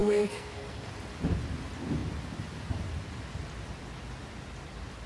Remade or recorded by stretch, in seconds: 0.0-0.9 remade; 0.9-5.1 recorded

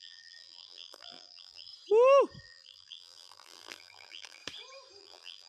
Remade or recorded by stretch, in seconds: 0.0-1.7 remade; 1.7-2.4 recorded; 2.4-4.4 remade; 4.4-5.0 recorded; 5.0-5.5 remade